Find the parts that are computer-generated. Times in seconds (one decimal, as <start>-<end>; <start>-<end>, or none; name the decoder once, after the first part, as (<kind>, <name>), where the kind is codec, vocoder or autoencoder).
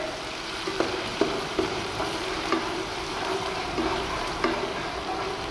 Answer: 1.1-4.4 (vocoder, BigVGAN v2)